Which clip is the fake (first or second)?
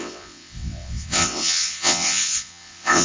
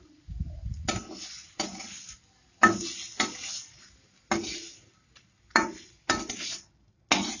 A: first